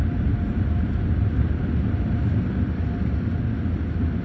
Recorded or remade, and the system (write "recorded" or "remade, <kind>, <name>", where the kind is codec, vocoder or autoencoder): recorded